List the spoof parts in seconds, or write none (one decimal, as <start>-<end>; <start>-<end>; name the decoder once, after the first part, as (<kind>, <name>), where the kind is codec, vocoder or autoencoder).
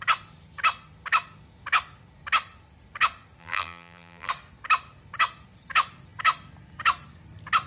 3.4-4.3 (vocoder, BigVGAN v2)